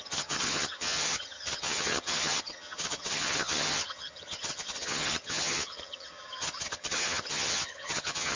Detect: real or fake fake